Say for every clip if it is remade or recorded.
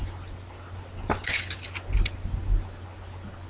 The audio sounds recorded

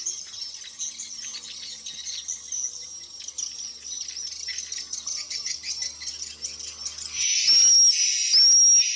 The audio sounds recorded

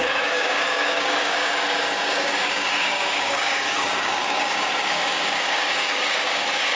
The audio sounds remade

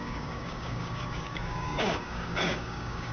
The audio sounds remade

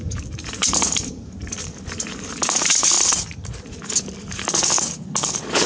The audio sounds remade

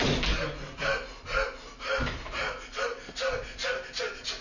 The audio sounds recorded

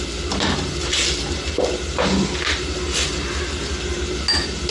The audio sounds recorded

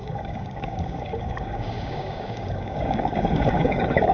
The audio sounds remade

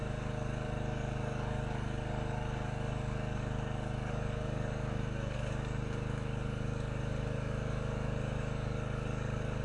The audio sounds remade